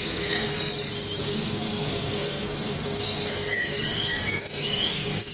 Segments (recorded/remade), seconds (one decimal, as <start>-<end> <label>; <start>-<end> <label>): 0.0-0.7 remade; 0.7-1.2 recorded; 1.2-5.3 remade